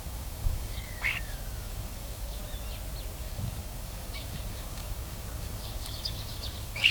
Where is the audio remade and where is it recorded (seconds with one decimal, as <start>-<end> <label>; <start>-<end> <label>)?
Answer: 0.0-2.4 remade; 2.4-3.2 recorded; 3.2-6.9 remade